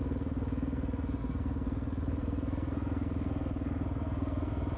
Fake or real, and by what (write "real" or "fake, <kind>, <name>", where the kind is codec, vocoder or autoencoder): fake, codec, SNAC